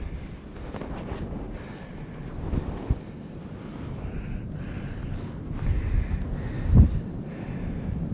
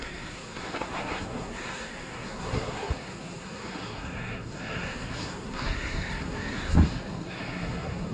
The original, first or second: first